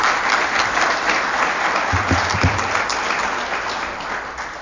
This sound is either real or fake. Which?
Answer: real